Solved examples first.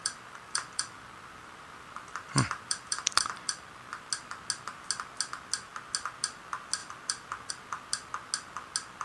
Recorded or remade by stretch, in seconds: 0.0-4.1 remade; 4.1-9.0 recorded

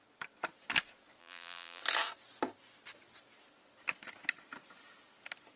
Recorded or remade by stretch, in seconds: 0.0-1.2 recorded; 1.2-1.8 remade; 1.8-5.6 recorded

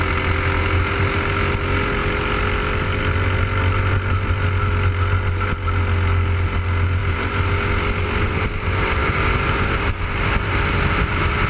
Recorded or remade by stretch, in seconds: 0.0-7.0 recorded; 7.0-7.5 remade; 7.5-11.5 recorded